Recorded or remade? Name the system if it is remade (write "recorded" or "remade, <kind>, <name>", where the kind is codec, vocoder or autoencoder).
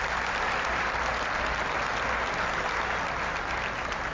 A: recorded